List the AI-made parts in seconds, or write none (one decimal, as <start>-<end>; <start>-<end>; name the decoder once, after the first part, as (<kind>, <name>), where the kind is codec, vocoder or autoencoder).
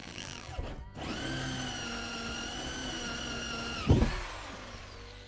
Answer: 0.0-0.5 (vocoder, BigVGAN v2)